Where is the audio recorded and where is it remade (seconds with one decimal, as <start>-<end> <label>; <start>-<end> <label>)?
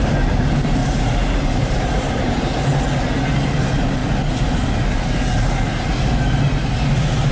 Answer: 0.0-0.8 recorded; 0.8-2.4 remade; 2.4-7.3 recorded